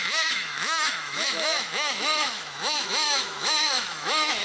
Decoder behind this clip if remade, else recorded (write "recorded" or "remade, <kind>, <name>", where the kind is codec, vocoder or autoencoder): remade, autoencoder, DAC-VAE